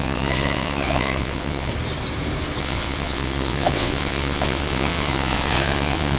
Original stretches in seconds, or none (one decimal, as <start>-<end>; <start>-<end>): 1.7-2.6